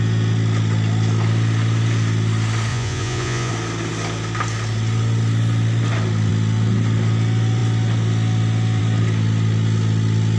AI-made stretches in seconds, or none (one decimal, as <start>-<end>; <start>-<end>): 2.7-3.5